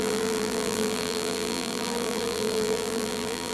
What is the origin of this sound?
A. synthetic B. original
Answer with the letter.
A